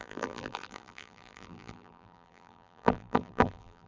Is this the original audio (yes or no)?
no